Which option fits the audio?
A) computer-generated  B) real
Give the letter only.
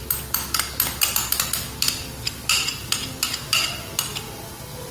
B